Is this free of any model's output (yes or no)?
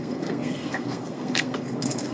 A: no